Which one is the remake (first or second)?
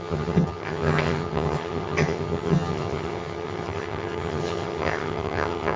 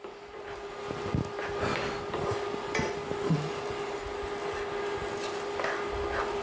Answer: first